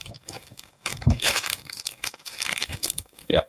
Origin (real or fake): fake